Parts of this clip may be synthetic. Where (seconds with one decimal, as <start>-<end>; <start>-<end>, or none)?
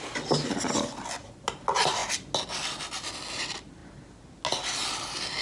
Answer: none